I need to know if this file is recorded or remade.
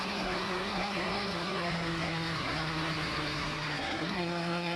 remade